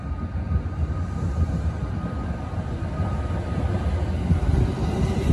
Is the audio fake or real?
real